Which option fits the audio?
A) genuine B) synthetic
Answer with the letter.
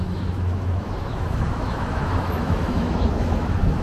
B